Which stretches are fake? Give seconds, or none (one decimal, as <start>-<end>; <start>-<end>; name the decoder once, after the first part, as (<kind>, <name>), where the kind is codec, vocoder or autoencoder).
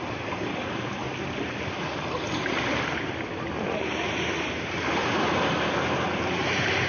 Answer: 0.0-1.0 (vocoder, BigVGAN v2); 2.7-6.9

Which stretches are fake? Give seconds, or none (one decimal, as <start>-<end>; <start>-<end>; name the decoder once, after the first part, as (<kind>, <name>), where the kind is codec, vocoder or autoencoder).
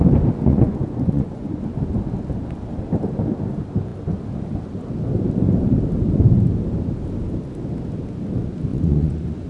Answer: 0.5-1.6 (vocoder, Vocos); 8.7-9.5